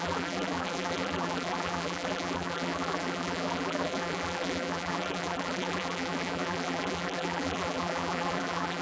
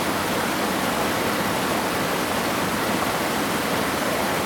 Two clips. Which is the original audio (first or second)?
second